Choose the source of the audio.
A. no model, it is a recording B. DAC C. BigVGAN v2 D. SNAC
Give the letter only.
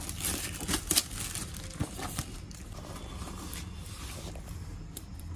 A